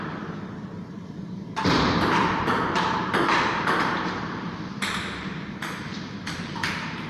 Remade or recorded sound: remade